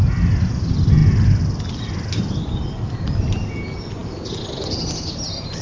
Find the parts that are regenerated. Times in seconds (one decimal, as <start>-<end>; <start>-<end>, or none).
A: none